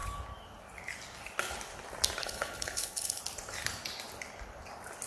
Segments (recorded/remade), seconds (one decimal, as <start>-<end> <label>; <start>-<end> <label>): 0.0-2.2 recorded; 2.2-3.2 remade; 3.2-5.1 recorded